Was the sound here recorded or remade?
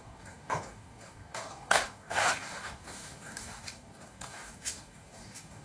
remade